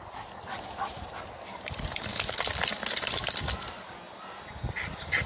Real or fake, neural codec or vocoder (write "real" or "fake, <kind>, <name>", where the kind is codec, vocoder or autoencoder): real